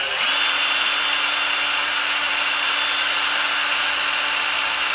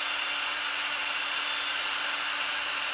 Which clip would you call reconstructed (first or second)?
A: second